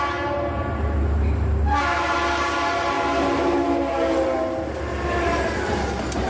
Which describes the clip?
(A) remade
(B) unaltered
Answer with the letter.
B